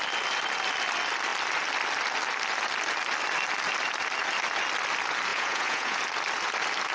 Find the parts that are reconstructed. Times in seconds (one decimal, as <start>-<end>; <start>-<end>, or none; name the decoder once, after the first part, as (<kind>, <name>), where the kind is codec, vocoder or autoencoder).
5.3-6.0 (vocoder, Vocos)